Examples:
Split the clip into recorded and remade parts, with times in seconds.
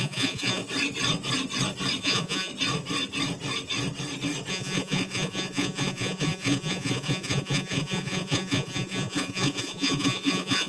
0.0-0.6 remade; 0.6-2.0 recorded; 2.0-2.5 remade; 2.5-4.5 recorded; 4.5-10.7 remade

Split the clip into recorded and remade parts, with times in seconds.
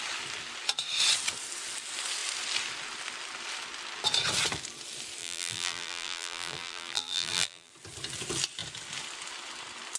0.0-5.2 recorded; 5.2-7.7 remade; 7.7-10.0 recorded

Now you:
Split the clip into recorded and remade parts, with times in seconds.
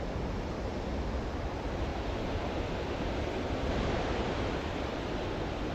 0.0-0.7 recorded; 0.7-1.2 remade; 1.2-1.9 recorded; 1.9-5.3 remade; 5.3-5.7 recorded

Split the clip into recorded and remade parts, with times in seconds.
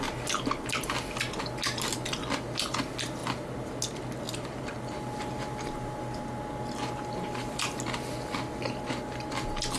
0.0-9.8 recorded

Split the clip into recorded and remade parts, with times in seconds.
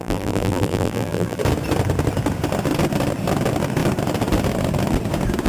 0.0-1.4 remade; 1.4-5.5 recorded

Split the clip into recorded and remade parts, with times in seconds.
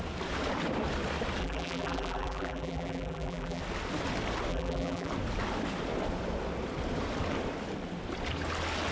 0.0-1.4 recorded; 1.4-3.6 remade; 3.6-4.5 recorded; 4.5-5.1 remade; 5.1-8.9 recorded